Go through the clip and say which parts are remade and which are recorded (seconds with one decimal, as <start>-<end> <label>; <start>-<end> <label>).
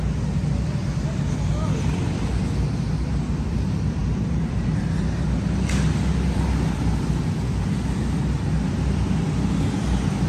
0.0-10.3 recorded